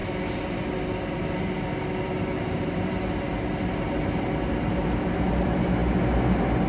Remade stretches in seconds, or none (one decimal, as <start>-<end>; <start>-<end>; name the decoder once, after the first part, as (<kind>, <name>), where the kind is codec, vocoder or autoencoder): none